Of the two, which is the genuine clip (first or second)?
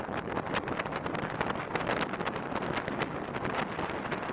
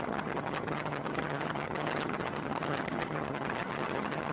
first